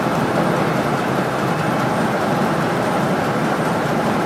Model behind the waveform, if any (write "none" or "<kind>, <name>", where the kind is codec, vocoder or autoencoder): none